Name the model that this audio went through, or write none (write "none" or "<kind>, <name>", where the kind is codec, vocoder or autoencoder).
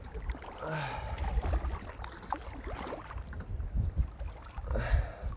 none